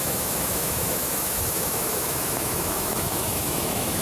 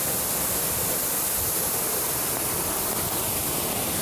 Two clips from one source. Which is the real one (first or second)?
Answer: second